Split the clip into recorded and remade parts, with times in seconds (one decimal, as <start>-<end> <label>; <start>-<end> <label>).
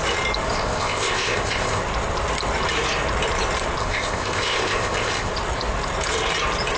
0.0-0.5 recorded; 0.5-1.8 remade; 1.8-3.8 recorded; 3.8-5.3 remade; 5.3-6.8 recorded